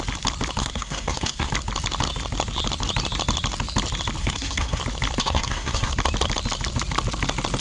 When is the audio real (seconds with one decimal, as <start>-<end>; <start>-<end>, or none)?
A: 0.0-0.6; 1.5-4.2; 4.8-5.2; 5.9-7.6